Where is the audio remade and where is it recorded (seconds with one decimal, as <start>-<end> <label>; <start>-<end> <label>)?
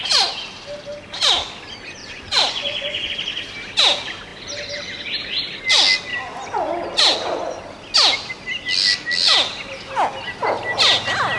0.0-2.0 recorded; 2.0-3.1 remade; 3.1-11.4 recorded